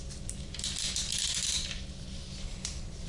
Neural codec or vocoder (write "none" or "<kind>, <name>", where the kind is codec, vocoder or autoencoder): vocoder, BigVGAN v2